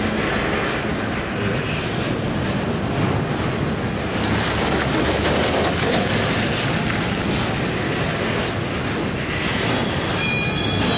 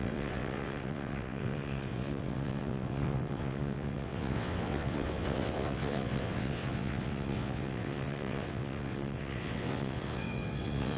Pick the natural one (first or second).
first